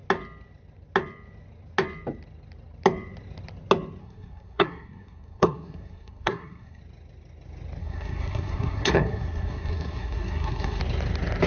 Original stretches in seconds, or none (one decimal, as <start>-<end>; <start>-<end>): 0.0-4.0; 6.8-7.8; 10.8-11.5